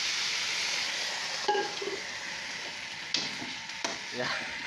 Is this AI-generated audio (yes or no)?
no